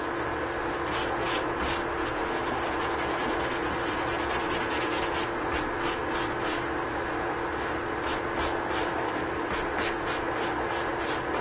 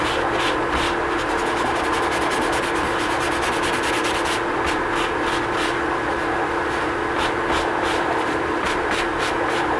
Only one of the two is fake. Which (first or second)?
second